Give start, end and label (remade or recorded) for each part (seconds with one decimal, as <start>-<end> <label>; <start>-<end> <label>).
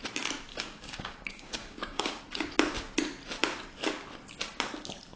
0.0-0.5 recorded; 0.5-2.2 remade; 2.2-5.2 recorded